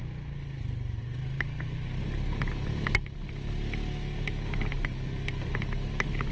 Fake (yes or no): no